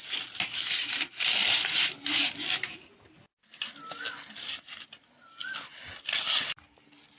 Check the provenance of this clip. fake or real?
real